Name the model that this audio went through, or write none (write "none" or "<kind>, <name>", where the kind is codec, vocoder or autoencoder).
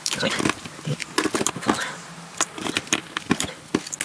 none